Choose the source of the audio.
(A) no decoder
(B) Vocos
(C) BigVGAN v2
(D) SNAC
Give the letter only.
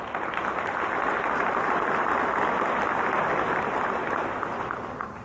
A